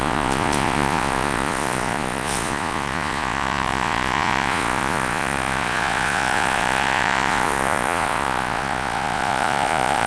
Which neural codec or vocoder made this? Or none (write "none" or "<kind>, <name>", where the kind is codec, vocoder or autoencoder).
vocoder, Vocos